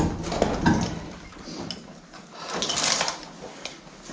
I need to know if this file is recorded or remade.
recorded